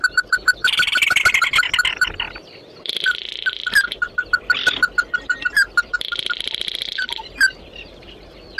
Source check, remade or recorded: remade